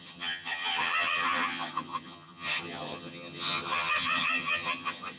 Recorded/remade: remade